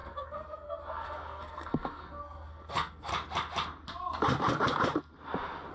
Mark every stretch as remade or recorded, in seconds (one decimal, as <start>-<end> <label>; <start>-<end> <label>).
0.0-3.1 remade; 3.1-5.7 recorded